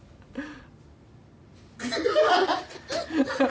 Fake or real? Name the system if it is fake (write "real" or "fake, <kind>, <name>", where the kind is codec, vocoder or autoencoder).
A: real